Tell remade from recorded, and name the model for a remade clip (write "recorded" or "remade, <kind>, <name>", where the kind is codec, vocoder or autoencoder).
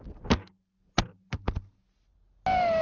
recorded